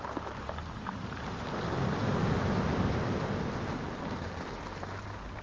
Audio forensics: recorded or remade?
recorded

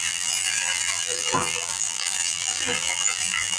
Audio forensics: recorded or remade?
remade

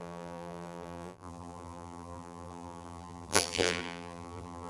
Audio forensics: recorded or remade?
remade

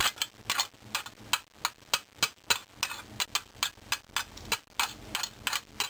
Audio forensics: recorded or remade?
recorded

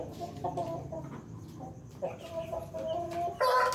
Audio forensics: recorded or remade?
recorded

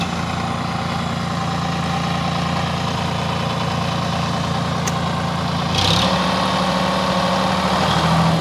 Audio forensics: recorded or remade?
recorded